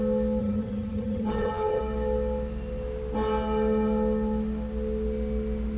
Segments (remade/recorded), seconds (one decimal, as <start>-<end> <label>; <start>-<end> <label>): 0.0-0.4 recorded; 0.4-1.8 remade; 1.8-5.8 recorded